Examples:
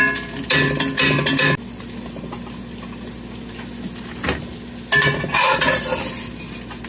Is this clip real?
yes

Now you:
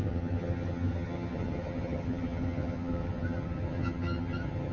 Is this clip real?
no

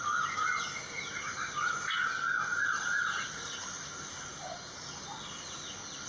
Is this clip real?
yes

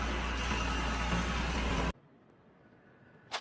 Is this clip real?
yes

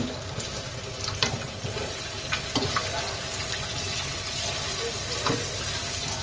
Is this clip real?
yes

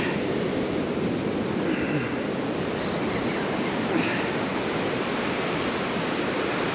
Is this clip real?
yes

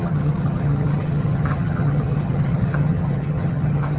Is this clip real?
no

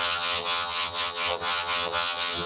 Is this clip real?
no